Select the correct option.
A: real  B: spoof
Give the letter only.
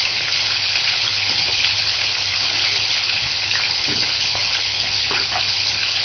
B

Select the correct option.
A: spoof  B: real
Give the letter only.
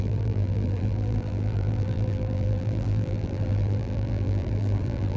A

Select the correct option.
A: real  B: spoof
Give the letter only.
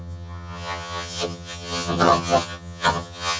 B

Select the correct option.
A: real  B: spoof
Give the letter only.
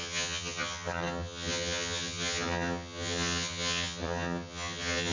B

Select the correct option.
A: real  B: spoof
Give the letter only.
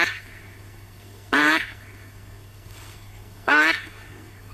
B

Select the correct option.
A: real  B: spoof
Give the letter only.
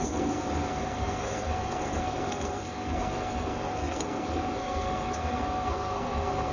B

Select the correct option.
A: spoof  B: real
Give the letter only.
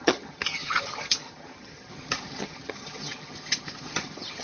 A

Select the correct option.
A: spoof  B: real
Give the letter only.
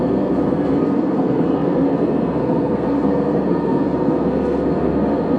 A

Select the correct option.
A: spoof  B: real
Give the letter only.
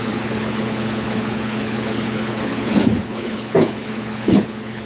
A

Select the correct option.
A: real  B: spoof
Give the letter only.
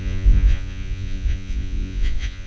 B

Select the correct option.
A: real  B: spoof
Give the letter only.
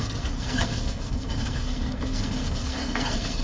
B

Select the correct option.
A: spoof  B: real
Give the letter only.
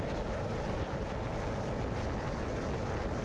B